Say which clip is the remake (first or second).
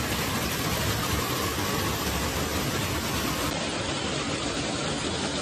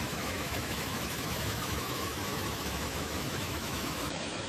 second